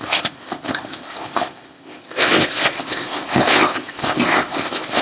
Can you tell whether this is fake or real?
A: fake